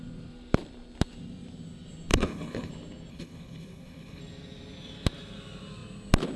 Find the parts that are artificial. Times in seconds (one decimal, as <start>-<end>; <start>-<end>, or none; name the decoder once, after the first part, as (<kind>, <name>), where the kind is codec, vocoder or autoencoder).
2.1-2.7 (codec, HILCodec); 3.1-4.2

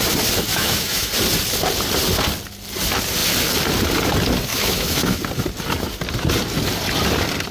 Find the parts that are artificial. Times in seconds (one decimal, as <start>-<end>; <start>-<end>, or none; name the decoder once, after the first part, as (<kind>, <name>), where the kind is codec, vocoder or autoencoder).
0.5-1.1 (autoencoder, DAC-VAE); 4.5-5.2

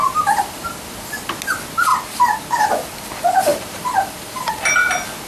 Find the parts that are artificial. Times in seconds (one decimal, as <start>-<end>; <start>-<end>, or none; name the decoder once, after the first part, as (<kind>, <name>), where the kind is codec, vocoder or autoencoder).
0.0-1.4 (vocoder, BigVGAN v2); 1.9-2.5; 3.5-5.3

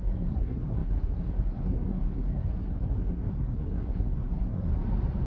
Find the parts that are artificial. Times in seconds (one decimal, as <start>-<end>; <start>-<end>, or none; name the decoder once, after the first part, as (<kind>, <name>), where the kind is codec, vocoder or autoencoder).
0.0-4.7 (codec, SNAC)

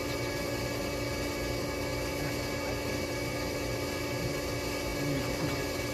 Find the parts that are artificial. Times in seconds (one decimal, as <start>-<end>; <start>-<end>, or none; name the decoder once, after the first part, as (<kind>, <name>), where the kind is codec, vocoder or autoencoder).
none

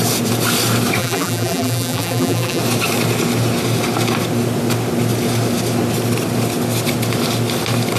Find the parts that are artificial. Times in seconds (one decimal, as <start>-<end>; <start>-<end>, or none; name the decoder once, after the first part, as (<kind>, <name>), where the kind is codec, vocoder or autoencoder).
1.0-2.6 (vocoder, BigVGAN v2)

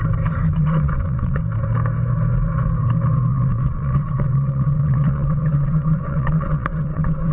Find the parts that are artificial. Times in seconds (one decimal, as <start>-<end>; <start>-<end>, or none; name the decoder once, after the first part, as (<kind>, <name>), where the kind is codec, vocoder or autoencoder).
0.6-1.4 (vocoder, WaveNeXt); 3.3-7.3

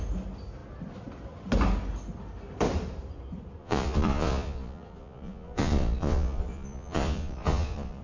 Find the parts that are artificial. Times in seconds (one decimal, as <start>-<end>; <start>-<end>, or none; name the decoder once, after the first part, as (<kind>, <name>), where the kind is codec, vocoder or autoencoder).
3.6-8.0 (vocoder, Vocos)